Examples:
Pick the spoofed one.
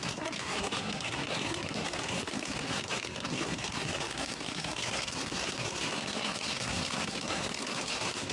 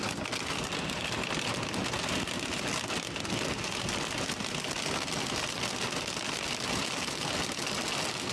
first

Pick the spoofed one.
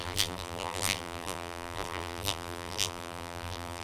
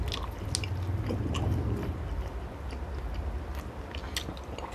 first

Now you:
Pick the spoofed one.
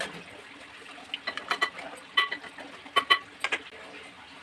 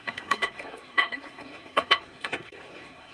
second